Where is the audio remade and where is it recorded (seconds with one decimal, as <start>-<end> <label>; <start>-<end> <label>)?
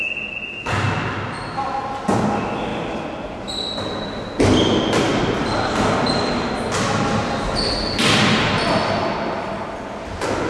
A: 0.0-2.7 recorded; 2.7-3.8 remade; 3.8-10.5 recorded